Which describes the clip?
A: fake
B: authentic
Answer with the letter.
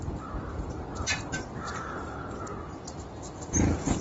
A